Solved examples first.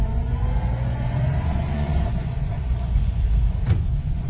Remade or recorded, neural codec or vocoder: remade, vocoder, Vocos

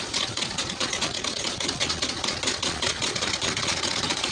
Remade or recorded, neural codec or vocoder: remade, vocoder, Vocos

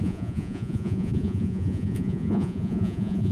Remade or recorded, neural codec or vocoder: remade, vocoder, Vocos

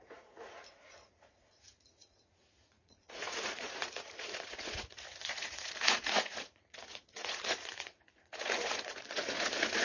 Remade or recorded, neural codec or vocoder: remade, vocoder, Vocos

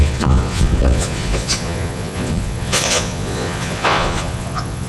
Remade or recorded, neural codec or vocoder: remade, vocoder, Vocos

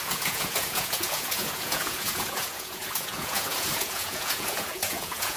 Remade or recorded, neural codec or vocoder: remade, vocoder, Vocos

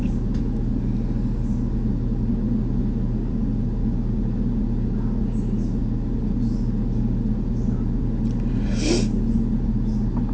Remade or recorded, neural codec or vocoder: recorded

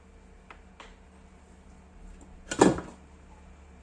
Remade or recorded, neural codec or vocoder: recorded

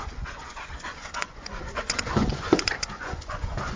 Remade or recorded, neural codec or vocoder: remade, vocoder, Vocos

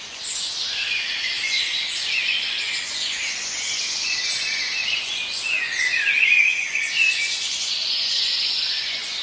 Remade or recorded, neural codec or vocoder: remade, vocoder, Vocos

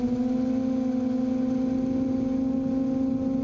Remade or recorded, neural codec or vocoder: recorded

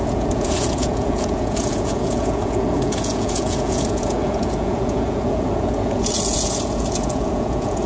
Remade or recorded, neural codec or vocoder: remade, vocoder, Vocos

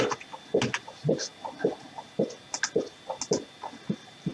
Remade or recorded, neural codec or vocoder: recorded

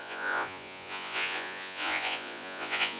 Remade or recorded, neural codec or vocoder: remade, vocoder, Vocos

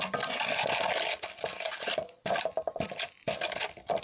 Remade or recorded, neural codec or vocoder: recorded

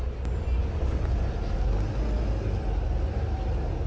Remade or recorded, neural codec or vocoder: recorded